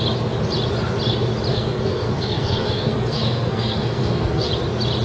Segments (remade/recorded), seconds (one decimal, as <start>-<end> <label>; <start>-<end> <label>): 0.0-1.5 recorded; 1.5-4.5 remade; 4.5-5.0 recorded